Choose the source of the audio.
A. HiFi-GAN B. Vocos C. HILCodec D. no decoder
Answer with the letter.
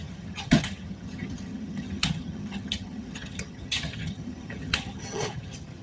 A